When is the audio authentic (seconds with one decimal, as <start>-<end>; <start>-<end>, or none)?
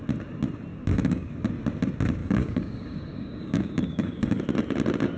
0.0-0.7; 1.3-2.2; 4.4-5.2